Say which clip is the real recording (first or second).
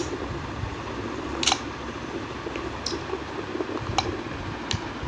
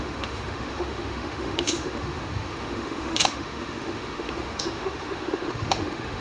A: first